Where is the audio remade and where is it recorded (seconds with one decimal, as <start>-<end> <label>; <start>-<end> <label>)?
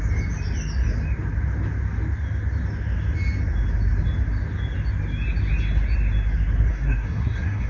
0.0-6.7 recorded; 6.7-7.7 remade